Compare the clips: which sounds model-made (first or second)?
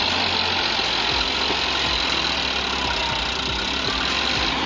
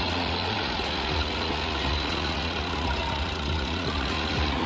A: second